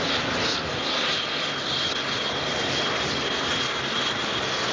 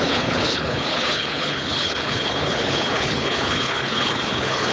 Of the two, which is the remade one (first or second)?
second